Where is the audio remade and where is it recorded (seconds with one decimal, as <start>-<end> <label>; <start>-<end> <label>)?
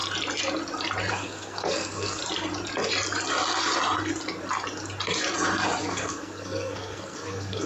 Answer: 0.0-1.1 recorded; 1.1-2.2 remade; 2.2-5.8 recorded; 5.8-7.7 remade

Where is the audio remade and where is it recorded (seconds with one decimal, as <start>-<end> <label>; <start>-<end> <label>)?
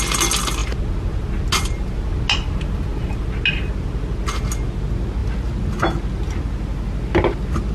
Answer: 0.0-7.7 recorded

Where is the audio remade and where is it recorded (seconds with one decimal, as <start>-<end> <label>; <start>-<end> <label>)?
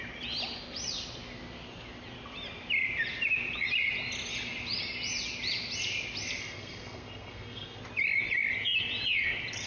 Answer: 0.0-6.4 recorded; 6.4-7.8 remade; 7.8-9.7 recorded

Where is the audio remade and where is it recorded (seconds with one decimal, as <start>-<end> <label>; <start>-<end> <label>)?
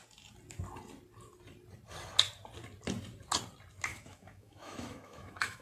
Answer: 0.0-3.9 recorded; 3.9-5.6 remade